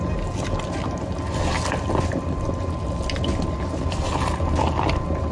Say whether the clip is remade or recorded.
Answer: recorded